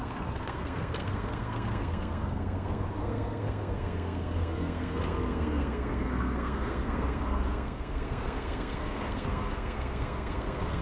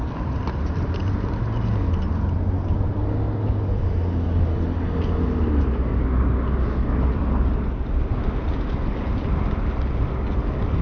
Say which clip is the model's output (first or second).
first